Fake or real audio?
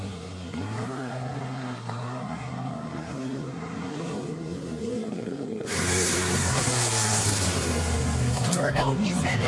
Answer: fake